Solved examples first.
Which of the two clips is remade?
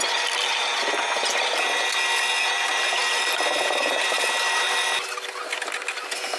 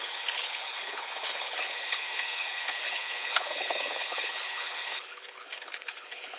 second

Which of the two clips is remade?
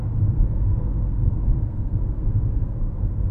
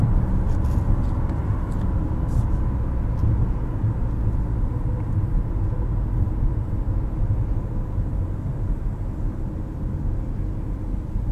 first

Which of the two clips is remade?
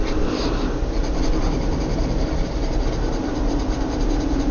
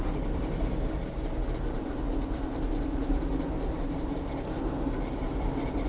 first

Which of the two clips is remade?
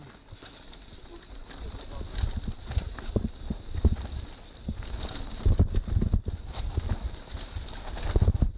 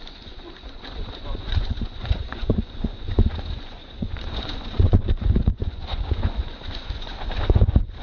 second